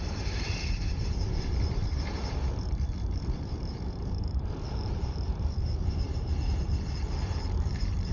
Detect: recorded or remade remade